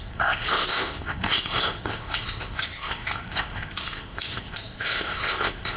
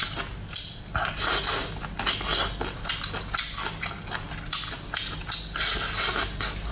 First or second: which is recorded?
second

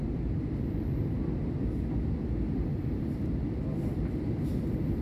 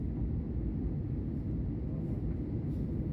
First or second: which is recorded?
second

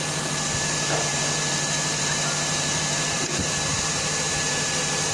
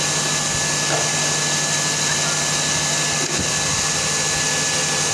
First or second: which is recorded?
second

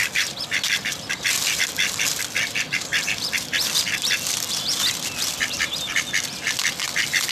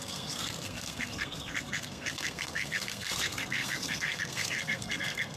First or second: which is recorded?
first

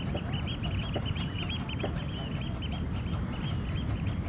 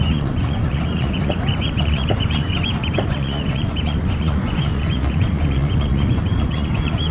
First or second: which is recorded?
first